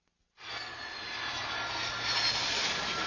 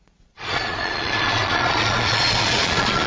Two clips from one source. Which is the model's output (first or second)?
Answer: second